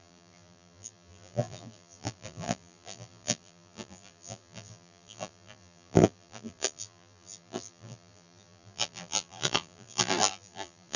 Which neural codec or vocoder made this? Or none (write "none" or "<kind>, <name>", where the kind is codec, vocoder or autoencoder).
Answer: vocoder, BigVGAN v2